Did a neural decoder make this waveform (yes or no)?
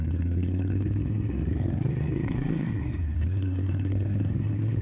yes